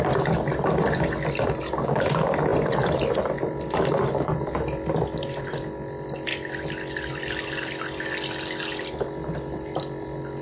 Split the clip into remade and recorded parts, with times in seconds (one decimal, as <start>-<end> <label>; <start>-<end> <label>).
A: 0.0-10.4 recorded